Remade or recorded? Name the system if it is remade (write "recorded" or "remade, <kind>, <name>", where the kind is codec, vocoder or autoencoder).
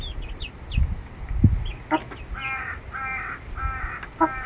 recorded